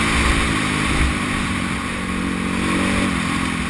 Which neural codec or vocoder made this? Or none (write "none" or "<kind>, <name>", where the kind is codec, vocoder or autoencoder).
none